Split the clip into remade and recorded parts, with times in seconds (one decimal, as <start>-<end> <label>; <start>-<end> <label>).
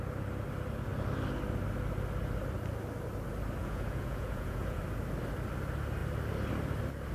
0.0-3.6 recorded; 3.6-4.8 remade; 4.8-7.1 recorded